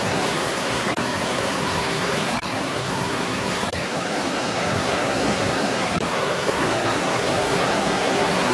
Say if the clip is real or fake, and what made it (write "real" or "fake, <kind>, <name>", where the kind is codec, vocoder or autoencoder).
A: fake, codec, SNAC